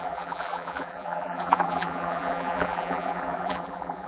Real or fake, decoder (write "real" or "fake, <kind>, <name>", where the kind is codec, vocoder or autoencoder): fake, vocoder, BigVGAN v2